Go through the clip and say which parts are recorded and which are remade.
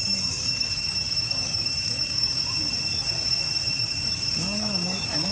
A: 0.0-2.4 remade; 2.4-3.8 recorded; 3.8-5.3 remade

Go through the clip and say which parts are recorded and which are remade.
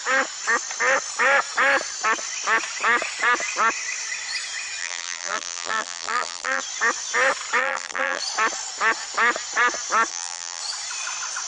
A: 0.0-4.8 recorded; 4.8-6.6 remade; 6.6-7.6 recorded; 7.6-8.2 remade; 8.2-10.1 recorded; 10.1-10.6 remade; 10.6-11.5 recorded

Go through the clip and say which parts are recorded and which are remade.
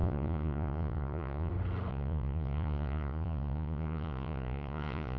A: 0.0-1.5 remade; 1.5-1.9 recorded; 1.9-5.2 remade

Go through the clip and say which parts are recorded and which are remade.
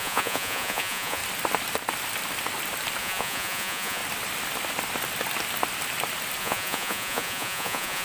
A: 0.0-1.2 remade; 1.2-3.0 recorded; 3.0-4.0 remade; 4.0-6.4 recorded; 6.4-8.0 remade